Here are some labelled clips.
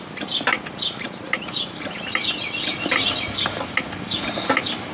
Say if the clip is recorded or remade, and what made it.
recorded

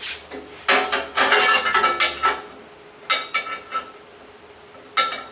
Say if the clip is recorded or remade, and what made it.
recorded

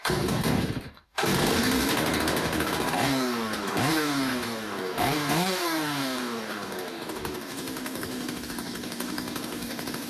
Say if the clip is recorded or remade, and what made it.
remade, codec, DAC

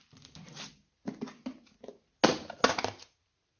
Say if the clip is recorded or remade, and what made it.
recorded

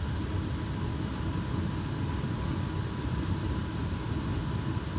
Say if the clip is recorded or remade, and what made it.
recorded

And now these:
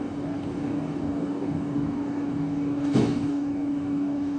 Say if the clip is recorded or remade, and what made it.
remade, codec, DAC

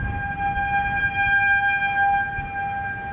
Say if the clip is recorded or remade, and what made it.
recorded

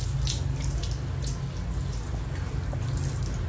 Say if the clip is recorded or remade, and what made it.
recorded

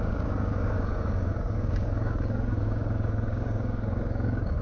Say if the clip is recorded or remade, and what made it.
remade, codec, DAC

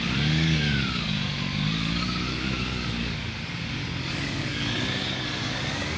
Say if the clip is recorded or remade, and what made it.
remade, codec, DAC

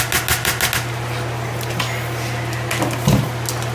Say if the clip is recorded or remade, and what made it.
recorded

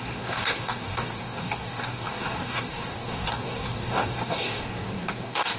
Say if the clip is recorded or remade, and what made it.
remade, codec, DAC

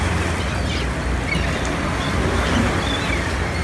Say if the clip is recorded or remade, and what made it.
recorded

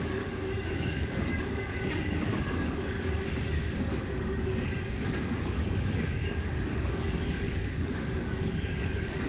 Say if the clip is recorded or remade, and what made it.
remade, codec, DAC